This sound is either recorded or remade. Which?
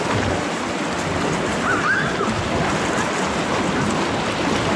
recorded